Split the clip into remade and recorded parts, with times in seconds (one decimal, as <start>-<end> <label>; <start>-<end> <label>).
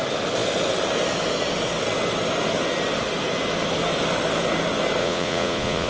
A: 0.0-5.0 recorded; 5.0-5.9 remade